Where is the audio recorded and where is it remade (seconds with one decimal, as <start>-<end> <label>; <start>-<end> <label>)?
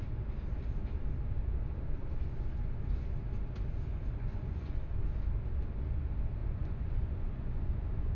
0.0-3.9 recorded; 3.9-4.7 remade; 4.7-6.4 recorded; 6.4-8.2 remade